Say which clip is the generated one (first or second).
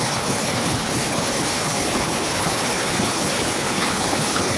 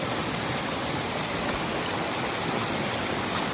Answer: first